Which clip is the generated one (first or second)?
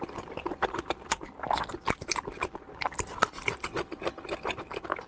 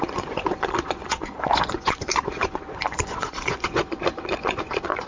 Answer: second